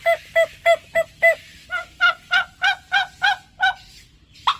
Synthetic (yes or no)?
no